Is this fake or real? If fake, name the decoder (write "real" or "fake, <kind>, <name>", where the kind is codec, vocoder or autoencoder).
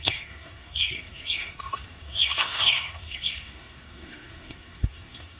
fake, codec, SNAC